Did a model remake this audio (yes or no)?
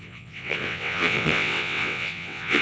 yes